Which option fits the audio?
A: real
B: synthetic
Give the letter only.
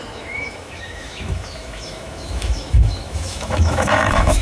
B